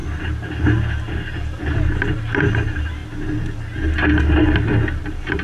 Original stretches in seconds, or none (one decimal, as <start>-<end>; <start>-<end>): 0.0-2.5; 3.0-5.0